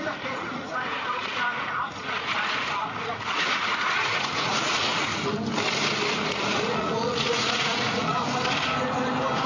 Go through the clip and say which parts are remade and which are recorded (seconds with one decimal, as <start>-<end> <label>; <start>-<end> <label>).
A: 0.0-5.1 remade; 5.1-6.3 recorded; 6.3-8.2 remade; 8.2-9.5 recorded